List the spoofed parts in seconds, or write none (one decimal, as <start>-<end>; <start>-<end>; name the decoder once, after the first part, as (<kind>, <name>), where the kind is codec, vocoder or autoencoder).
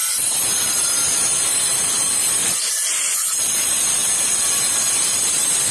0.0-2.7 (vocoder, BigVGAN v2); 4.0-5.7